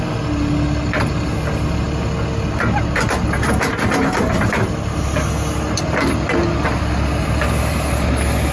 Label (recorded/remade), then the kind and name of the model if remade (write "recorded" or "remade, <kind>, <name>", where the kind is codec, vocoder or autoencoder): recorded